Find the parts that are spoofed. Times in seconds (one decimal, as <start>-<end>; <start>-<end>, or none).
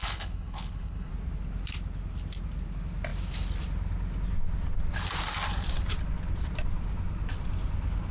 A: 0.0-1.1